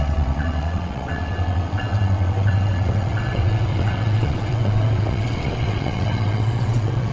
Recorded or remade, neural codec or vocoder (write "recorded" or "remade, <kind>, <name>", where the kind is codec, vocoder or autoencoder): remade, vocoder, WaveNeXt